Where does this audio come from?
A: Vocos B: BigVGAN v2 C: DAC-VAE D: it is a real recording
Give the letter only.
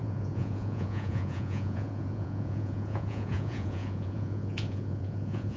A